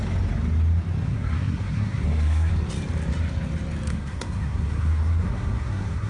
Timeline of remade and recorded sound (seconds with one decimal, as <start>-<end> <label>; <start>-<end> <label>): 0.0-1.1 recorded; 1.1-2.5 remade; 2.5-3.9 recorded; 3.9-6.1 remade